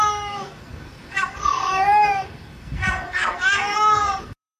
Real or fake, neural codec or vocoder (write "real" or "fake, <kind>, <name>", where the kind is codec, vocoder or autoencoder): fake, codec, SNAC